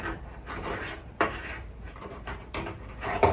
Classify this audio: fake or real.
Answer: fake